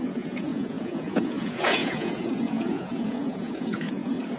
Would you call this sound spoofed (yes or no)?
yes